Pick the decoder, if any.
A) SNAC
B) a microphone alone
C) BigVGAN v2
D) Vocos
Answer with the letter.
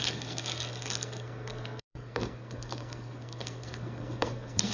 A